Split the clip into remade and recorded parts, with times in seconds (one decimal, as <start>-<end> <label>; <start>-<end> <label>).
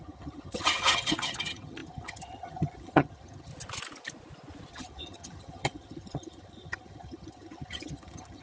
0.0-3.5 remade; 3.5-4.7 recorded; 4.7-8.4 remade